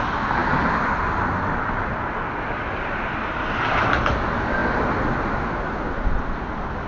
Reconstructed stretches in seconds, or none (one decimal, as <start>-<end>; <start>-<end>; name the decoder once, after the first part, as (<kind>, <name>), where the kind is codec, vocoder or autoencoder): none